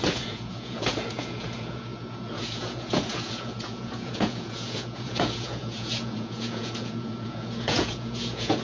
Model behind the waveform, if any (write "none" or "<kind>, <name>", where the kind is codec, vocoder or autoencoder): vocoder, Vocos